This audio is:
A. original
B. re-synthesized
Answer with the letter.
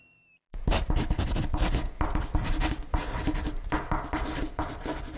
A